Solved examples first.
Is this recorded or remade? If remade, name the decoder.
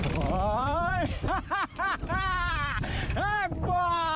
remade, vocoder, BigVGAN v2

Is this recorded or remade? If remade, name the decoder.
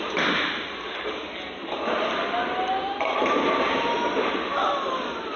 recorded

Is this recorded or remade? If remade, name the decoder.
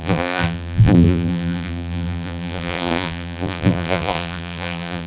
remade, vocoder, BigVGAN v2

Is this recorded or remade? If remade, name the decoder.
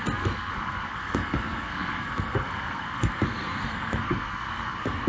remade, codec, SNAC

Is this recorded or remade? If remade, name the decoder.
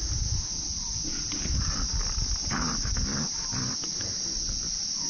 recorded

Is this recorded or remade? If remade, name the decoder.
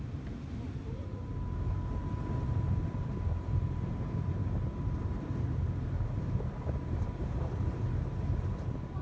remade, vocoder, BigVGAN v2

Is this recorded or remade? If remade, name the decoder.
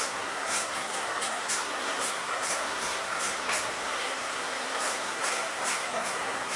remade, codec, SNAC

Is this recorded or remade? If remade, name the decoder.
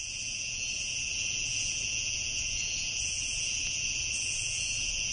remade, vocoder, Vocos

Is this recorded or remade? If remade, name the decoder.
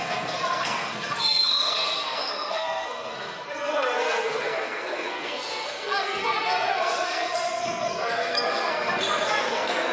remade, codec, SNAC